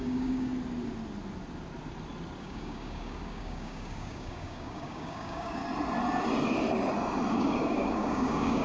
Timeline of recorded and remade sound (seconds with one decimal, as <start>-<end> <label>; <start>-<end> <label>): 0.0-0.5 remade; 0.5-2.4 recorded; 2.4-5.6 remade; 5.6-7.3 recorded; 7.3-8.6 remade